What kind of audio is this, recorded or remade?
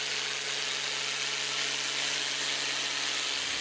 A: recorded